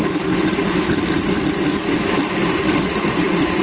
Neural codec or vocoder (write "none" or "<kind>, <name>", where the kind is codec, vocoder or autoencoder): none